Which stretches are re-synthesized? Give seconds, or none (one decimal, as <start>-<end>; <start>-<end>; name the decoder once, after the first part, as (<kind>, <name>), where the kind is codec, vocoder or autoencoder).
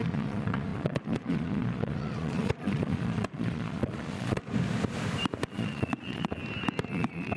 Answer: 0.0-4.4 (vocoder, Vocos); 5.5-6.4; 6.9-7.4